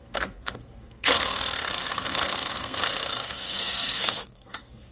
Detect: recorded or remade remade